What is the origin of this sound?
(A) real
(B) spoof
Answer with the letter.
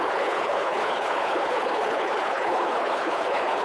B